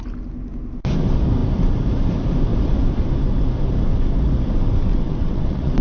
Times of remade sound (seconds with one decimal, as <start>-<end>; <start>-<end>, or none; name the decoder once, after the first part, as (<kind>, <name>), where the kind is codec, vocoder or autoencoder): 4.9-5.8 (vocoder, WaveNeXt)